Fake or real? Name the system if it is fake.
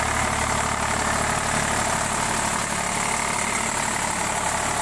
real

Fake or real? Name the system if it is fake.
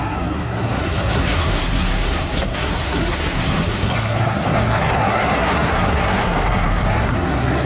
fake, codec, SNAC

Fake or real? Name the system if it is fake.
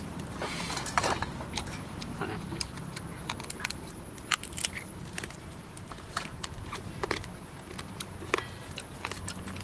fake, vocoder, BigVGAN v2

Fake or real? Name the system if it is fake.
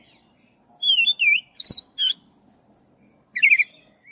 real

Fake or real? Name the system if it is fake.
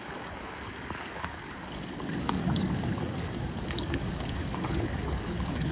fake, codec, DAC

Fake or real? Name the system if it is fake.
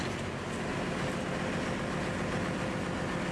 real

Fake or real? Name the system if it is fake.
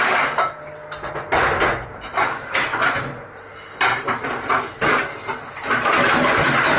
real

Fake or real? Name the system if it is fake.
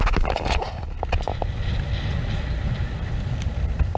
real